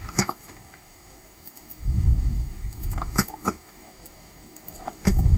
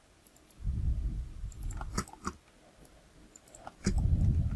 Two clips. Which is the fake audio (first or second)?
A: first